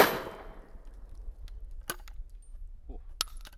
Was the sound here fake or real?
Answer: real